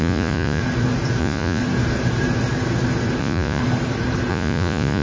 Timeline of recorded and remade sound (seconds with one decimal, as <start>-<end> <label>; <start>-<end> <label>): 0.0-0.6 remade; 0.6-1.2 recorded; 1.2-1.6 remade; 1.6-3.2 recorded; 3.2-3.6 remade; 3.6-4.3 recorded; 4.3-5.0 remade